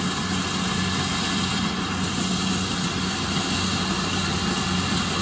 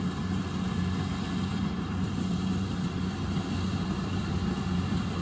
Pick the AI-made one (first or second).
second